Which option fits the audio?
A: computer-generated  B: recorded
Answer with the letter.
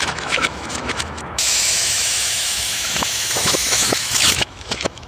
A